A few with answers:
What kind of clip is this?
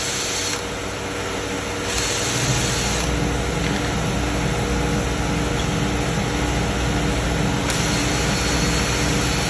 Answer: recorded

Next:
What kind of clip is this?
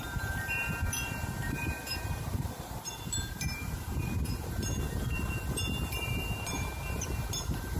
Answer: remade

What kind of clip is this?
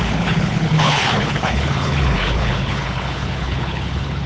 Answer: remade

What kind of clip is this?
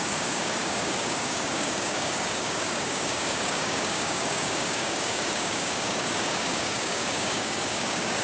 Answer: remade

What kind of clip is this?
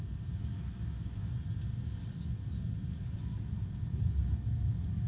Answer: recorded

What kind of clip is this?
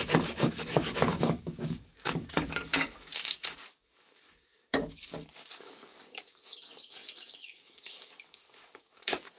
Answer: remade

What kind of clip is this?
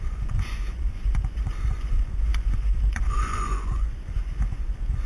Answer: remade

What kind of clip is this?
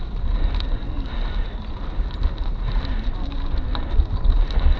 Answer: recorded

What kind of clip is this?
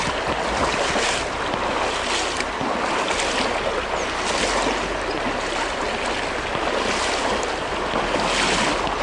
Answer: recorded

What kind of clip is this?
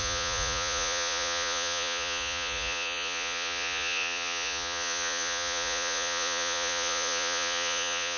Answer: remade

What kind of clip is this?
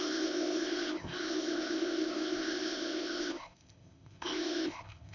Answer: remade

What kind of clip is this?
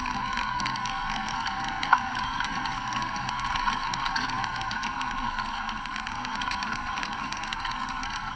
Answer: remade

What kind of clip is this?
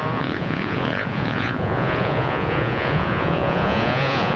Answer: remade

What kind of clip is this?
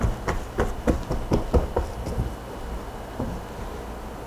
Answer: recorded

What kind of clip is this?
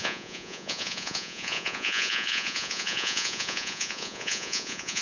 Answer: remade